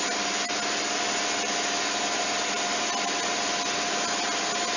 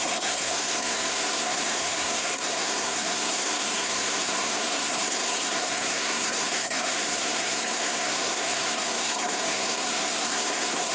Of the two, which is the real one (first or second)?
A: first